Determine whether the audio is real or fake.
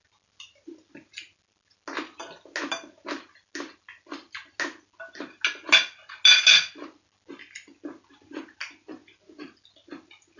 real